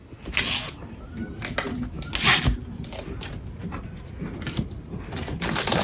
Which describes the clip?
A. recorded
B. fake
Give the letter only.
A